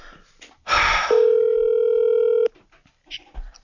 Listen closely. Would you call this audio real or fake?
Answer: real